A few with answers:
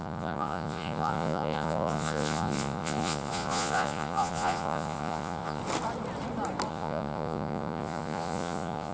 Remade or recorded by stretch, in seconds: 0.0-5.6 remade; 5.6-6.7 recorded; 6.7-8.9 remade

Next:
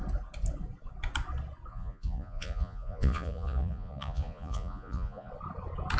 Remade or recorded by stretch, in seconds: 0.0-1.7 recorded; 1.7-5.3 remade; 5.3-6.0 recorded

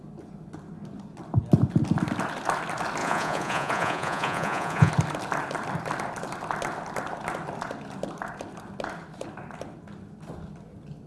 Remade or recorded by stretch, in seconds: 0.0-3.0 recorded; 3.0-4.9 remade; 4.9-11.1 recorded